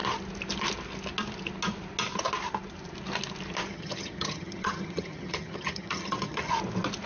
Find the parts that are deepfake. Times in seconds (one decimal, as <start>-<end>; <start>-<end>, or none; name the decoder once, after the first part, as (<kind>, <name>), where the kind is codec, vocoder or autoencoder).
3.7-6.5 (vocoder, HiFi-GAN)